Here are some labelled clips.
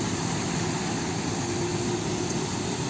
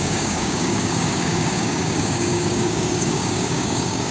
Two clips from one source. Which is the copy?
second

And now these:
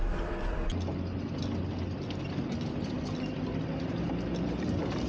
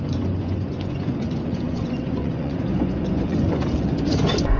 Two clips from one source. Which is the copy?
second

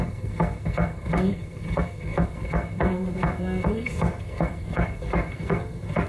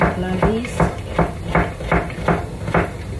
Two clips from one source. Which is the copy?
first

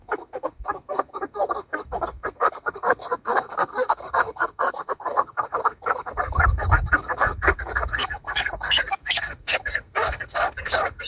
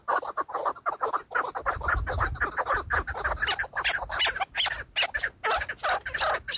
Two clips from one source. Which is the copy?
first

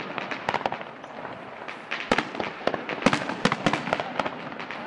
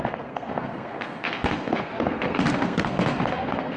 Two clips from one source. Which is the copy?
second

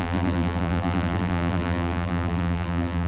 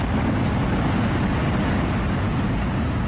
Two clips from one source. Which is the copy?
first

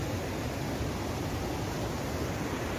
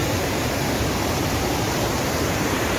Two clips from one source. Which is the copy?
second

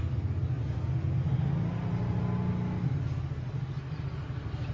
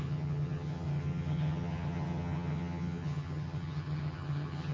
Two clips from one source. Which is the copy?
second